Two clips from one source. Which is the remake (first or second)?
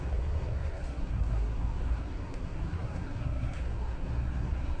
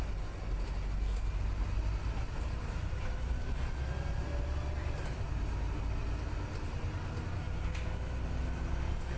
first